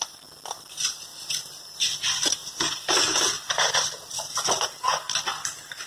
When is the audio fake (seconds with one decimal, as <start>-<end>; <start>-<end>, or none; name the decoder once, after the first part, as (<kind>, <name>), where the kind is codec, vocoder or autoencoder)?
none